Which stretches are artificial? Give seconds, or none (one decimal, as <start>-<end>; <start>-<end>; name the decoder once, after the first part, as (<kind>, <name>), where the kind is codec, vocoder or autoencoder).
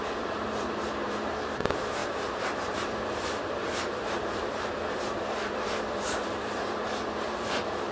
0.0-7.9 (vocoder, BigVGAN v2)